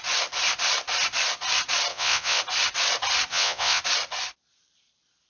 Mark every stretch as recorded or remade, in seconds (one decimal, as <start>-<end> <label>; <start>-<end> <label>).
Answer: 0.0-1.9 recorded; 1.9-2.4 remade; 2.4-3.3 recorded; 3.3-3.8 remade; 3.8-5.3 recorded